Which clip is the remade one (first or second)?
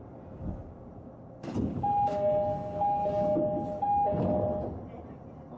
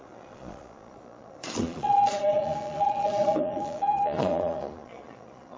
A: second